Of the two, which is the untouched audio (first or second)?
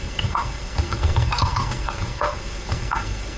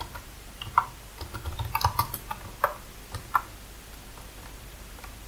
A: second